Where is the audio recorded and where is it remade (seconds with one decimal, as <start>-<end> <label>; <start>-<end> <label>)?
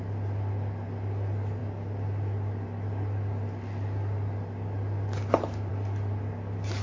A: 0.0-6.8 recorded